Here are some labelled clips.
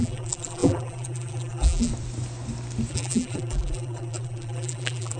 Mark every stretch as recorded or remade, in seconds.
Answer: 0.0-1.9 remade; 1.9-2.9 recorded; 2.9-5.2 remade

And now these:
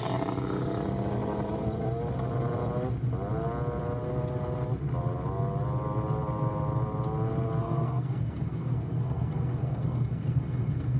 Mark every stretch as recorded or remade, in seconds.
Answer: 0.0-7.6 recorded; 7.6-11.0 remade

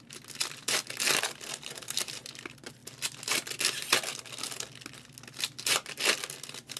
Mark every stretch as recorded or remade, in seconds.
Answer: 0.0-6.8 recorded